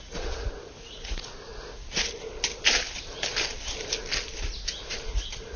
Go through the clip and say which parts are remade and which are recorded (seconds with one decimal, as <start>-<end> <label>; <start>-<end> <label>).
0.0-1.5 remade; 1.5-4.9 recorded; 4.9-5.6 remade